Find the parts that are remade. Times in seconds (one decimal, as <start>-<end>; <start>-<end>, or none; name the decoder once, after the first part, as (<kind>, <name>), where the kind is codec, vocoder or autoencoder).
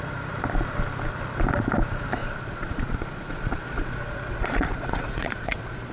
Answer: 2.2-5.9 (vocoder, Vocos)